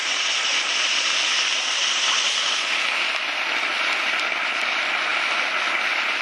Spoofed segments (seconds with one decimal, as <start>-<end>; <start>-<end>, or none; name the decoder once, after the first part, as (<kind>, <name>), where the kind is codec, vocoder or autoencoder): none